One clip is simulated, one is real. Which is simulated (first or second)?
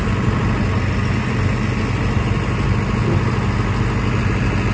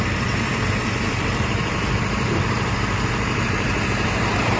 second